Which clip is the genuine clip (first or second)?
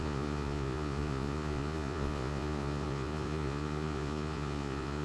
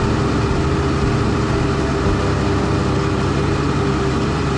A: second